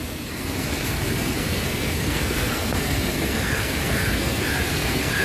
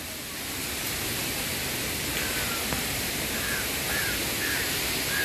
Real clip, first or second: second